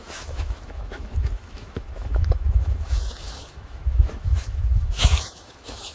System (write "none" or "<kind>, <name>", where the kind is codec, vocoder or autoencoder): autoencoder, DAC-VAE